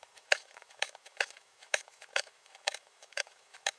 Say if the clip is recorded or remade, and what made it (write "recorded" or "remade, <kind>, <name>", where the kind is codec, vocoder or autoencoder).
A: remade, autoencoder, DAC-VAE